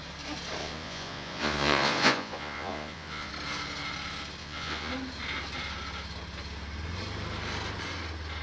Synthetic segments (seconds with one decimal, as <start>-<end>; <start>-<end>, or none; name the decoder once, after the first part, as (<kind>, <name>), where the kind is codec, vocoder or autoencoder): 0.6-3.3 (vocoder, Vocos); 4.4-4.9